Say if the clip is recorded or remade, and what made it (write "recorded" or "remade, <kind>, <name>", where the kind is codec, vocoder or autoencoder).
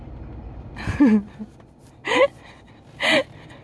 recorded